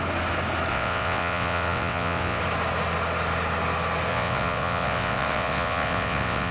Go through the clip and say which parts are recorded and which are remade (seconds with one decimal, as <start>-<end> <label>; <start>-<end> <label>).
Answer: 0.0-0.7 recorded; 0.7-2.4 remade; 2.4-4.1 recorded; 4.1-6.5 remade

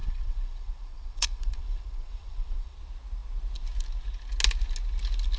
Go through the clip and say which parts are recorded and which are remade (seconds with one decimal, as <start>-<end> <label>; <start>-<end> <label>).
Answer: 0.0-2.8 remade; 2.8-5.4 recorded

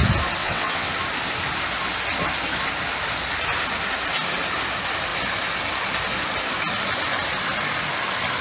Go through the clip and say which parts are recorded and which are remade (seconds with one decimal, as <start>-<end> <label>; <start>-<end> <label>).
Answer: 0.0-0.4 recorded; 0.4-0.9 remade; 0.9-8.4 recorded

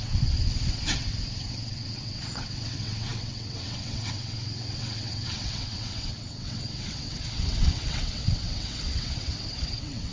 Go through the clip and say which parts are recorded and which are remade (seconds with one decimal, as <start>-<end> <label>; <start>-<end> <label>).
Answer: 0.0-10.1 remade

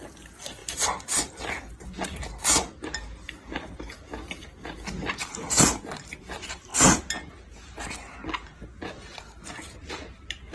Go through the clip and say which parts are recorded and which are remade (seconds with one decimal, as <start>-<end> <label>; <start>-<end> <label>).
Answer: 0.0-10.5 recorded

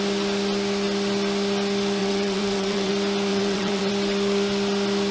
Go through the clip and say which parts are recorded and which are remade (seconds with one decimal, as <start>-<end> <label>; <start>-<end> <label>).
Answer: 0.0-2.0 recorded; 2.0-2.9 remade; 2.9-3.3 recorded; 3.3-3.9 remade; 3.9-5.1 recorded

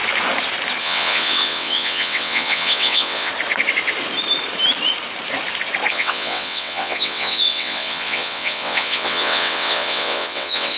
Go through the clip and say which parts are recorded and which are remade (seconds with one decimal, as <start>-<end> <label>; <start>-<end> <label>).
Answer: 0.0-0.8 recorded; 0.8-3.3 remade; 3.3-5.9 recorded; 5.9-10.8 remade

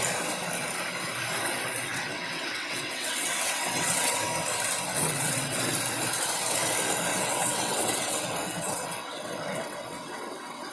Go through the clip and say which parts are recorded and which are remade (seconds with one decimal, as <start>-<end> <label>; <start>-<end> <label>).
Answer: 0.0-1.9 recorded; 1.9-4.2 remade; 4.2-4.9 recorded; 4.9-5.6 remade; 5.6-7.1 recorded; 7.1-10.7 remade